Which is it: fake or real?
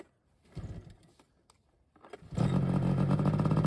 real